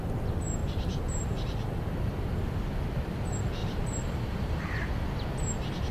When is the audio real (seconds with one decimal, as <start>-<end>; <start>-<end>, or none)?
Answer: 0.0-0.6; 1.8-3.6; 4.9-5.9